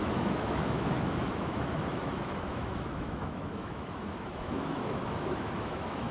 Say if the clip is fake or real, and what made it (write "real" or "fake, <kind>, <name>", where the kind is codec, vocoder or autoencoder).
fake, autoencoder, DAC-VAE